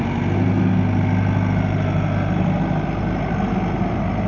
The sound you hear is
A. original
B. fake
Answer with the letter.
A